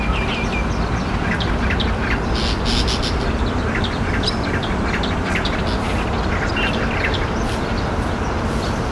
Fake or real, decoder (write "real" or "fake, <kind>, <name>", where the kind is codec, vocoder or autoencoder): real